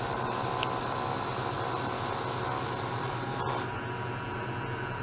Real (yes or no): yes